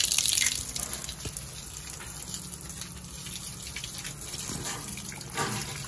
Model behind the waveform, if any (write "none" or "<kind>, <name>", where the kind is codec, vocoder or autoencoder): none